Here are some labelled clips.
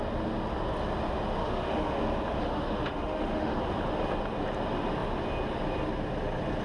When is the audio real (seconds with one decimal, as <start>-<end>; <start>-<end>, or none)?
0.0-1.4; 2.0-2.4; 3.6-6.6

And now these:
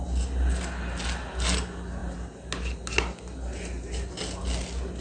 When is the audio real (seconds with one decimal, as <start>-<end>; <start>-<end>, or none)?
0.0-5.0

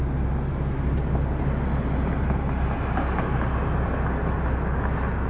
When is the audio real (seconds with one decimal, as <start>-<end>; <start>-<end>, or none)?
0.0-5.3

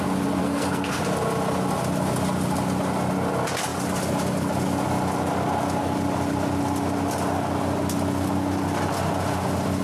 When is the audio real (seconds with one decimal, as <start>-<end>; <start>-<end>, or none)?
0.0-0.4; 1.0-9.8

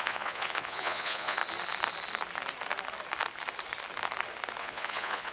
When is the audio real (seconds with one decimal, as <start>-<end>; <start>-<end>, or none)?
1.4-4.6

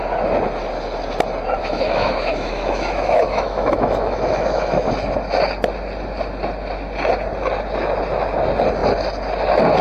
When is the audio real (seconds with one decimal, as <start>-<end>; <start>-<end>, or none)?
0.0-1.6; 4.9-9.8